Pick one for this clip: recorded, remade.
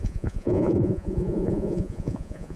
remade